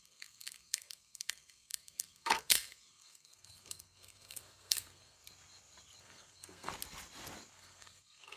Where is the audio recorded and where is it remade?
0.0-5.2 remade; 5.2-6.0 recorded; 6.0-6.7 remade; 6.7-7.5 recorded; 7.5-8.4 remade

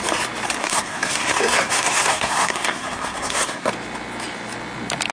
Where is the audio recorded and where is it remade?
0.0-0.6 recorded; 0.6-3.7 remade; 3.7-5.1 recorded

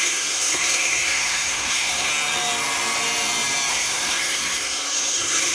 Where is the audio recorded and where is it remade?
0.0-2.1 remade; 2.1-3.7 recorded; 3.7-5.5 remade